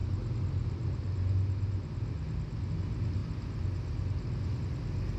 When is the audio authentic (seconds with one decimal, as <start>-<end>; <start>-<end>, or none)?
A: 0.0-5.2

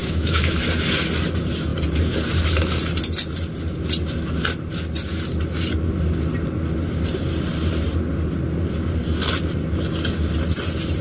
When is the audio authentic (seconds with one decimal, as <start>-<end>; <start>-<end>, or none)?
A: 0.6-11.0

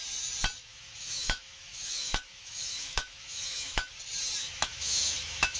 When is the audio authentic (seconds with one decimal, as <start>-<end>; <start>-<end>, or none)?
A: 0.0-0.7; 3.9-4.4